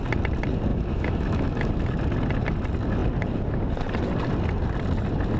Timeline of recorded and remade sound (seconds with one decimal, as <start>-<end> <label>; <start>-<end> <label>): 0.0-0.7 recorded; 0.7-1.7 remade; 1.7-5.4 recorded